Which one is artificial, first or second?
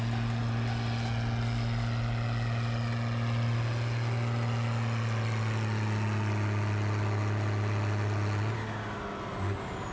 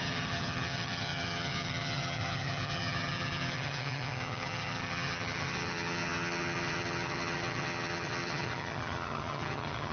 second